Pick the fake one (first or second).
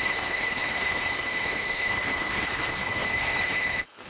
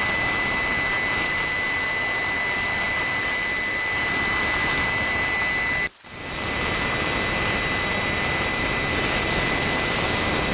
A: first